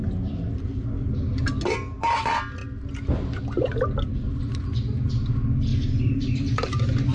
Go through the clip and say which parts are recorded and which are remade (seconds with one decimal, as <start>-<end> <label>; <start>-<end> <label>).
0.0-5.7 recorded; 5.7-7.1 remade